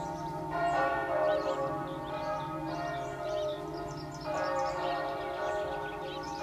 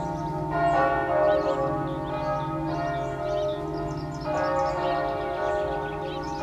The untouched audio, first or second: second